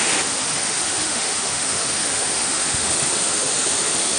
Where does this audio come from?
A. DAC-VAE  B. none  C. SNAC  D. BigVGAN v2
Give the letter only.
A